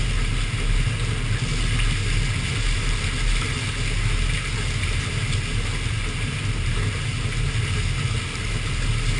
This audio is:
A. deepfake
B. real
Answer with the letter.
B